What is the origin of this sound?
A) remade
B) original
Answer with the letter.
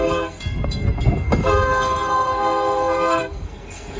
A